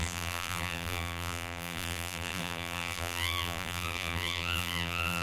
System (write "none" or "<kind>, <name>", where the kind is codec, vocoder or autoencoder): vocoder, BigVGAN v2